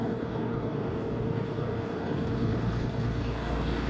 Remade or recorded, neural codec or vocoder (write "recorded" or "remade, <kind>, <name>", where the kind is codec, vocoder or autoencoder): remade, codec, DAC